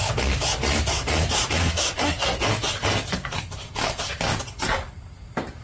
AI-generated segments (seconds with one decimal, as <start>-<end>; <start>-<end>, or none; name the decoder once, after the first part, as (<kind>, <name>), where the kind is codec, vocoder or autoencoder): 1.6-2.4 (codec, SNAC)